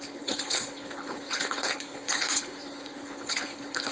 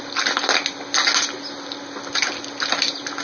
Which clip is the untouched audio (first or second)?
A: second